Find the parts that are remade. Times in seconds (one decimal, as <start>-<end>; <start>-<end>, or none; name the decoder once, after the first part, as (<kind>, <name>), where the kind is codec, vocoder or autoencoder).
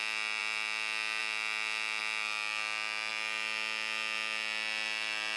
none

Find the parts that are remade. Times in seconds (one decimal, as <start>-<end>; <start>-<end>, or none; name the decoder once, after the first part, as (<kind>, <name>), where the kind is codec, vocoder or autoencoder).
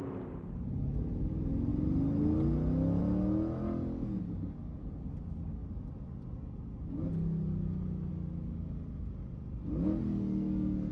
10.1-10.9 (codec, SNAC)